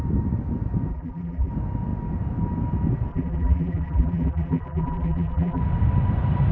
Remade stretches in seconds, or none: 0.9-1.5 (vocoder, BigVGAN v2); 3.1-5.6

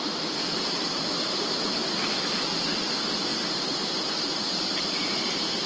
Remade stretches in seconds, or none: 3.3-5.2 (vocoder, BigVGAN v2)

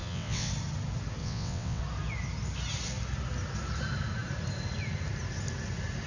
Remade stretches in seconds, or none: 0.0-0.5 (vocoder, WaveNeXt); 1.2-1.8

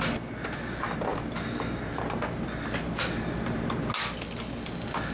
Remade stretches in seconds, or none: none